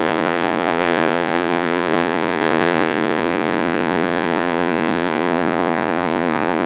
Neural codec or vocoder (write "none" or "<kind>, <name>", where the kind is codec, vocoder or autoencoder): vocoder, Vocos